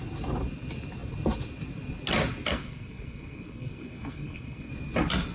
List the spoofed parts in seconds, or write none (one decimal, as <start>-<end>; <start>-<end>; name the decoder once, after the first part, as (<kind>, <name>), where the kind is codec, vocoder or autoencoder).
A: 2.5-4.7 (codec, SNAC)